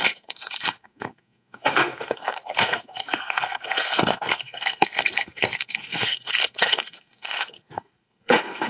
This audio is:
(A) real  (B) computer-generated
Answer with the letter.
B